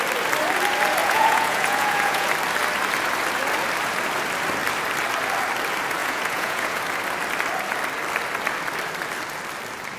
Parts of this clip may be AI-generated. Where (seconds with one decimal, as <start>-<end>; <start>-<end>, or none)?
1.0-2.3; 6.0-6.8